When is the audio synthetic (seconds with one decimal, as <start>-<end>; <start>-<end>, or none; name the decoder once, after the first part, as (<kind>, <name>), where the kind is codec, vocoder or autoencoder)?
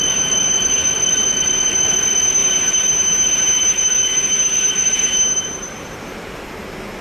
2.4-6.4 (vocoder, BigVGAN v2)